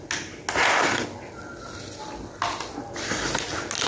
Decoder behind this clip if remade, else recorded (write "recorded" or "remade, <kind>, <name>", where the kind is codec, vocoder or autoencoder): recorded